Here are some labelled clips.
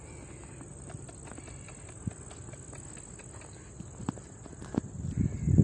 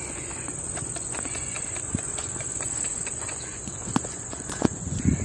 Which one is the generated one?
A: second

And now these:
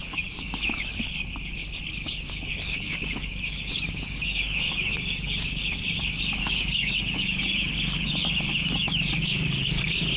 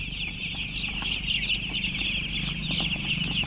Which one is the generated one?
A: first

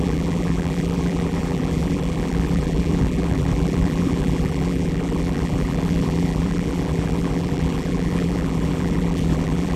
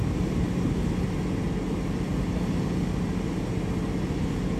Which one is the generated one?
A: first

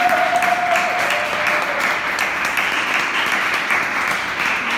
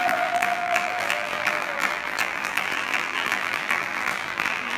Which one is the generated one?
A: second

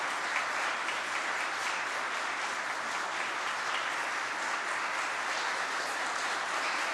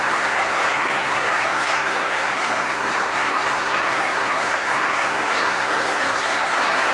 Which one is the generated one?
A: second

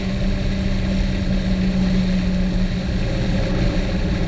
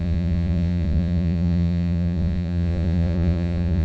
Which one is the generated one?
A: second